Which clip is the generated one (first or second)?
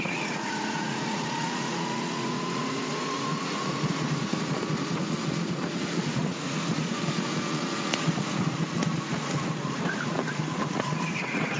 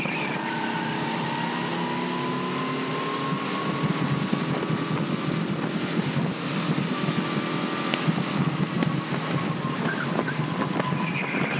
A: first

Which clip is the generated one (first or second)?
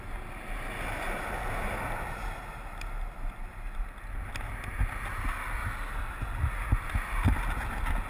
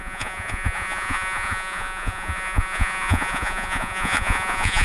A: second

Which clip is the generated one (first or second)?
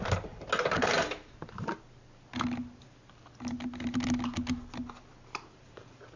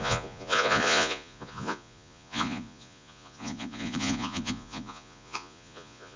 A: second